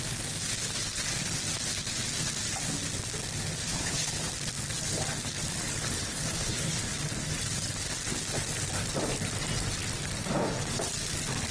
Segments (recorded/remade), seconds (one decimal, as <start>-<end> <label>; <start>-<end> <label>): 0.0-3.6 recorded; 3.6-4.1 remade; 4.1-6.0 recorded; 6.0-6.8 remade; 6.8-11.5 recorded